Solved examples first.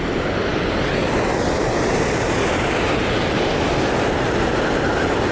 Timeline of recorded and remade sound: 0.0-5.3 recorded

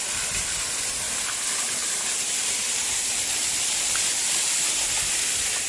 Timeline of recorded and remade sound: 0.0-5.7 recorded

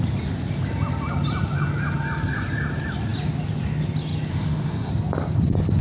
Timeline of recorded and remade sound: 0.0-4.3 recorded; 4.3-4.9 remade; 4.9-5.8 recorded

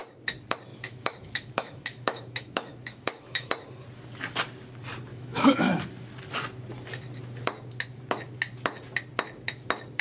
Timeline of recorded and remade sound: 0.0-0.7 recorded; 0.7-3.5 remade; 3.5-5.1 recorded; 5.1-5.8 remade; 5.8-10.0 recorded